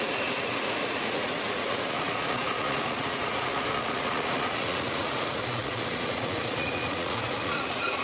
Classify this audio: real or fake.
fake